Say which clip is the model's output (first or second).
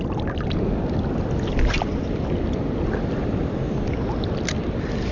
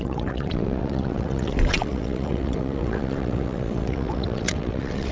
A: second